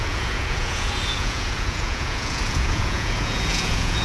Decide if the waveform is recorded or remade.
remade